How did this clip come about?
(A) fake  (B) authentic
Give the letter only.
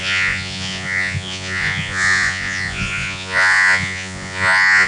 A